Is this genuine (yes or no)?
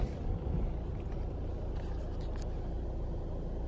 yes